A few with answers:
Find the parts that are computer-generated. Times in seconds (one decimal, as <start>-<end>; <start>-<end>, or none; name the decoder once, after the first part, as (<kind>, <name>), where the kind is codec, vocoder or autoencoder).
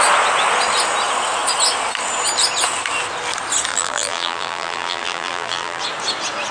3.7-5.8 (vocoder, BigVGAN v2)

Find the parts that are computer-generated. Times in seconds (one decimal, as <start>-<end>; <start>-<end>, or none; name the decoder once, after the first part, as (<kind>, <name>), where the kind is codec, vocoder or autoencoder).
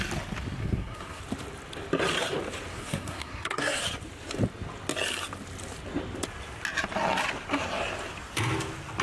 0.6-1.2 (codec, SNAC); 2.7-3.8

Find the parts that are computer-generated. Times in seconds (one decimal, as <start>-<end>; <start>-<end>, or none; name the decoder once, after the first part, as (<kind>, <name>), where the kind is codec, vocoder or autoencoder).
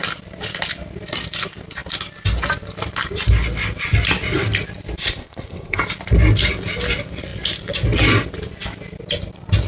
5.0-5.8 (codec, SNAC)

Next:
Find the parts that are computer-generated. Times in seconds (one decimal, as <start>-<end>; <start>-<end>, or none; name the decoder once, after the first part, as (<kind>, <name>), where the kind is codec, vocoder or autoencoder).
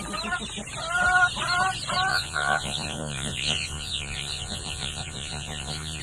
2.1-6.0 (vocoder, Vocos)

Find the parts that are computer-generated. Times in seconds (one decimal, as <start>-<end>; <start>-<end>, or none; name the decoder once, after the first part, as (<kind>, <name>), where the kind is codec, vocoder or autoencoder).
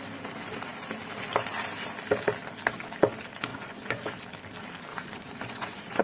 3.5-4.0 (vocoder, Vocos); 4.9-6.0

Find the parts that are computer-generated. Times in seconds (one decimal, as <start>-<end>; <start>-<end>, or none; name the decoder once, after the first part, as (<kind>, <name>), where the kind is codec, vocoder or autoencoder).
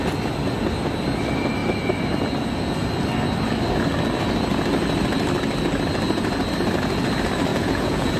7.5-8.2 (vocoder, Vocos)